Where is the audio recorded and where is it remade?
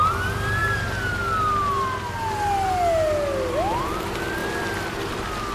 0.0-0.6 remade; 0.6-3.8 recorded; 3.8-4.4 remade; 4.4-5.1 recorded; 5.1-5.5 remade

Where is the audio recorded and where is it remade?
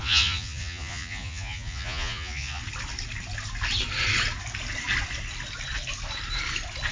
0.0-2.6 remade; 2.6-6.9 recorded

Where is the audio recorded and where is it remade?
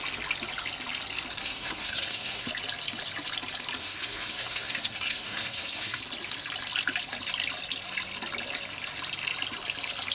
0.0-1.4 recorded; 1.4-2.5 remade; 2.5-3.8 recorded; 3.8-6.0 remade; 6.0-10.1 recorded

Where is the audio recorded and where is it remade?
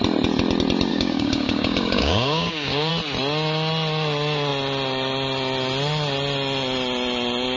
0.0-0.9 recorded; 0.9-2.9 remade; 2.9-7.6 recorded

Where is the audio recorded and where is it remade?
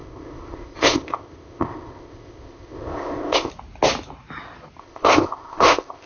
0.0-3.5 remade; 3.5-4.8 recorded; 4.8-6.1 remade